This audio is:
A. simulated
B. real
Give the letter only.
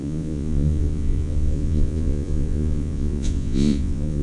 A